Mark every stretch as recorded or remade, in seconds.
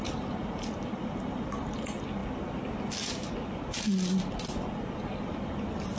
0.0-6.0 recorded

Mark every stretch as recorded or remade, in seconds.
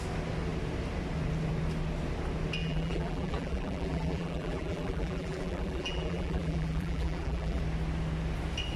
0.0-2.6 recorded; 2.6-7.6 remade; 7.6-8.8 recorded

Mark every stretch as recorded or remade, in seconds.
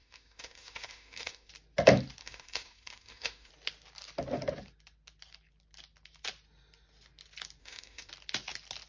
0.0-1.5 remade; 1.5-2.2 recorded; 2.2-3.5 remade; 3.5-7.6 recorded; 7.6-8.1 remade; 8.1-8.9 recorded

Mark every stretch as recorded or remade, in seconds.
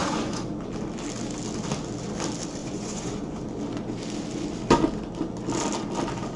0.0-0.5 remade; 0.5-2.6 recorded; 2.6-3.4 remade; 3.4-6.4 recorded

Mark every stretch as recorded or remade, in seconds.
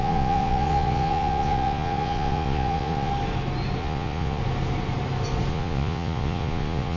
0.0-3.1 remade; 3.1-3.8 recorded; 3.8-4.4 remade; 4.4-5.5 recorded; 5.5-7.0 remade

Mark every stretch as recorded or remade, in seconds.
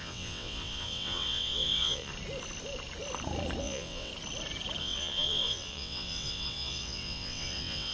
0.0-2.1 remade; 2.1-3.6 recorded; 3.6-4.1 remade; 4.1-4.8 recorded; 4.8-7.9 remade